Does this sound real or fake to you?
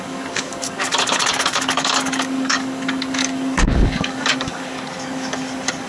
fake